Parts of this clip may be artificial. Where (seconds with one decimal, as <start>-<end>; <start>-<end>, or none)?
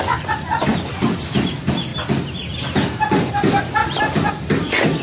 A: 0.7-1.3; 3.8-4.3